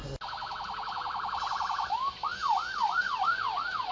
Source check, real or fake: real